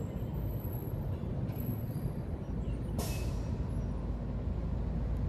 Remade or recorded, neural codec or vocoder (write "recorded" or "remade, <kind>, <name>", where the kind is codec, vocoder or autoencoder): recorded